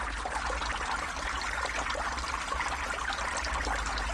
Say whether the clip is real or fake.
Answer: real